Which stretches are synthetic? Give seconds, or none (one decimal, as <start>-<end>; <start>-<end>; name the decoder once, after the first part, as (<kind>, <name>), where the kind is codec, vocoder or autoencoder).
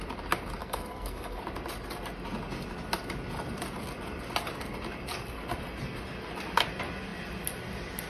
0.6-1.4 (codec, SNAC)